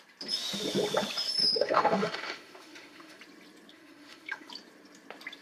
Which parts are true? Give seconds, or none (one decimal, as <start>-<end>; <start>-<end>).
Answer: 0.0-1.4; 3.2-3.7; 4.5-5.4